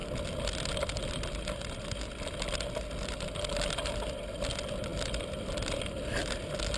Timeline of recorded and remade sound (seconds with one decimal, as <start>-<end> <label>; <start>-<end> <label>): 0.0-6.8 recorded

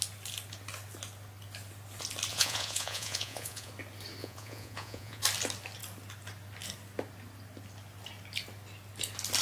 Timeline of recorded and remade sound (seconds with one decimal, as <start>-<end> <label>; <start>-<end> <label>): 0.0-2.3 recorded; 2.3-3.7 remade; 3.7-4.2 recorded; 4.2-5.2 remade; 5.2-9.4 recorded

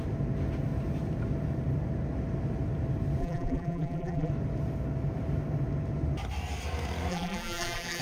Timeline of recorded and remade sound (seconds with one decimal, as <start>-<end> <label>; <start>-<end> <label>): 0.0-3.2 recorded; 3.2-4.3 remade; 4.3-7.1 recorded; 7.1-8.0 remade

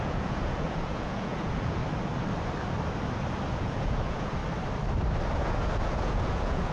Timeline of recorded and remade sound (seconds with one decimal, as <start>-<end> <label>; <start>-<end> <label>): 0.0-1.8 remade; 1.8-3.5 recorded; 3.5-4.4 remade; 4.4-5.3 recorded; 5.3-6.7 remade

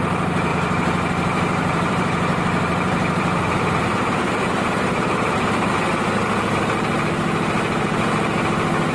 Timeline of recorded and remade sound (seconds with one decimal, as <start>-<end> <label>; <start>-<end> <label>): 0.0-0.5 recorded; 0.5-5.7 remade; 5.7-8.9 recorded

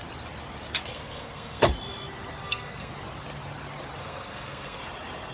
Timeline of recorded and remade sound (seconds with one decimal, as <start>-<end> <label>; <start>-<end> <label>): 0.0-0.9 recorded; 0.9-1.6 remade; 1.6-2.4 recorded; 2.4-2.9 remade; 2.9-4.0 recorded; 4.0-4.8 remade; 4.8-5.3 recorded